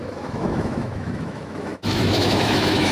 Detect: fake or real fake